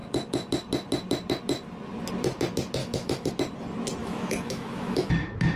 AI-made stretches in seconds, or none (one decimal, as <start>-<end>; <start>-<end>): 2.8-3.3; 4.0-5.1